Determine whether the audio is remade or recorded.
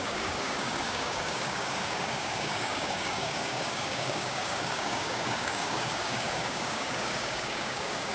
remade